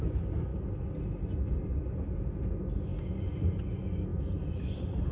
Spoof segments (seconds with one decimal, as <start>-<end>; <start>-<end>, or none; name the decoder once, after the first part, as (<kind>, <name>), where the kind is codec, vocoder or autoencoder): none